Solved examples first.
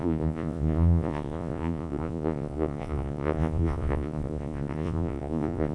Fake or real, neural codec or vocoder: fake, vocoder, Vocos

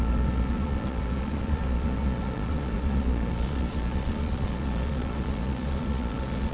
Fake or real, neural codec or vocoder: fake, vocoder, Vocos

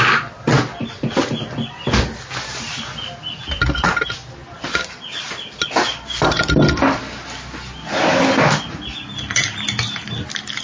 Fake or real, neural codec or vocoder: real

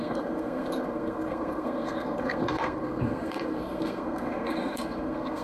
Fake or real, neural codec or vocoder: fake, codec, SNAC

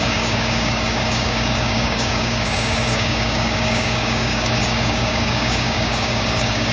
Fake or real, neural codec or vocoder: fake, codec, DAC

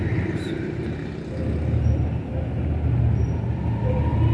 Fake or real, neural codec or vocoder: real